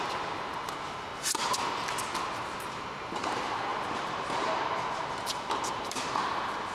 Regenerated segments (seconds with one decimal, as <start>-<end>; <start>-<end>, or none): 0.0-1.1; 2.4-6.7

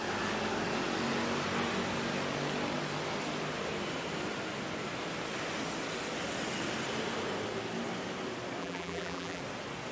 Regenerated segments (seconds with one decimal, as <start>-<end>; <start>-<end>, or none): 8.6-9.4

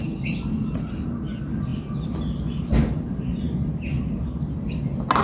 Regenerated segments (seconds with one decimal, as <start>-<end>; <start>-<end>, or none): none

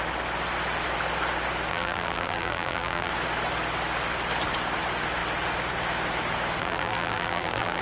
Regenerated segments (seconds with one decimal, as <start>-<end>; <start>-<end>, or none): 1.7-3.1; 6.6-7.8

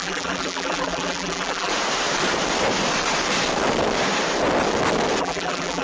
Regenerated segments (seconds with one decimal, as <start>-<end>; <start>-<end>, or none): 0.0-1.7; 5.2-5.8